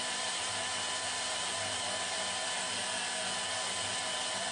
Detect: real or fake real